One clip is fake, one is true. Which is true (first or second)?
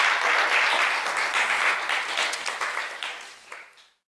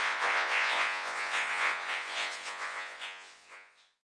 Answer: first